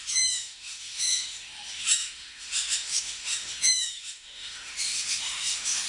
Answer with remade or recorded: remade